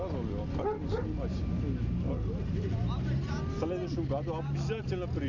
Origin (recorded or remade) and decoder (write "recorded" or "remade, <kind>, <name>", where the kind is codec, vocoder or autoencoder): recorded